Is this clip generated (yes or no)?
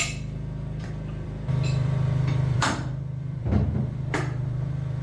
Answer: yes